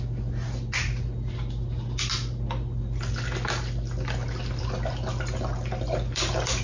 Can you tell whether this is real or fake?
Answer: real